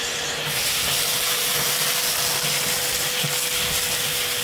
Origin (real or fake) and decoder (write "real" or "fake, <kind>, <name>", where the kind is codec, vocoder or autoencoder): real